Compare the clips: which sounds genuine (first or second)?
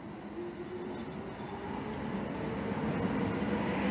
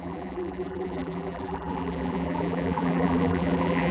first